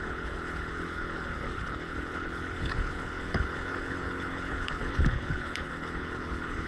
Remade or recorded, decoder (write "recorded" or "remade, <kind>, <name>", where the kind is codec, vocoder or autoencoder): remade, codec, HILCodec